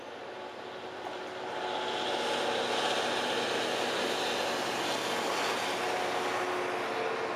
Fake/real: real